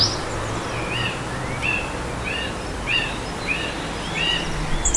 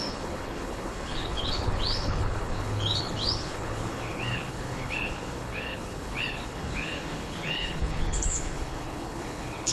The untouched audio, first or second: first